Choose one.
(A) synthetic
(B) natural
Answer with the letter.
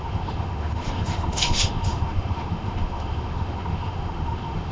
A